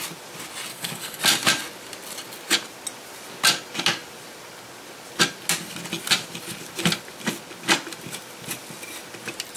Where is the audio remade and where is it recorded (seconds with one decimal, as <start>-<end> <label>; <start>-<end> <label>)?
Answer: 0.0-0.7 recorded; 0.7-1.2 remade; 1.2-9.6 recorded